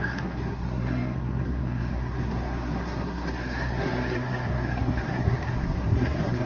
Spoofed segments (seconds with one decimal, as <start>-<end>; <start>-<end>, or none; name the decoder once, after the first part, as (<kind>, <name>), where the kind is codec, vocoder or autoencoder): 0.0-6.5 (codec, SNAC)